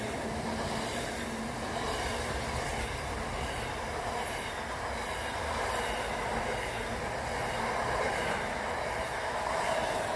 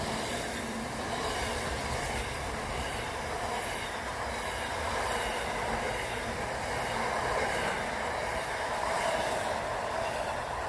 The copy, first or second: second